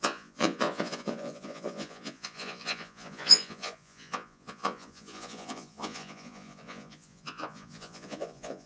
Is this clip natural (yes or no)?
no